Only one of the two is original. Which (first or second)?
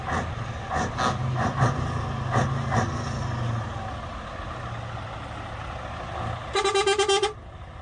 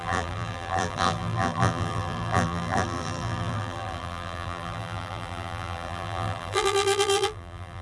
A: first